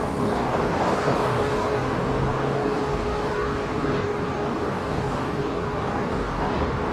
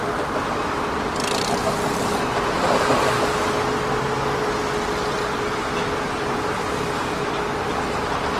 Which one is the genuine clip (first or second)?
second